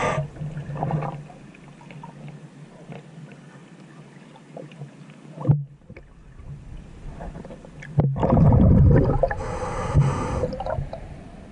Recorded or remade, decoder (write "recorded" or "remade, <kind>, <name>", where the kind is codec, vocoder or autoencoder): recorded